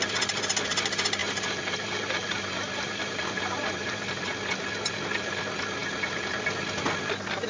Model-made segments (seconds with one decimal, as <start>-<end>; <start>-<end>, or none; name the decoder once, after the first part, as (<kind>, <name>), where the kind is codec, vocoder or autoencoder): 1.2-4.2 (vocoder, BigVGAN v2)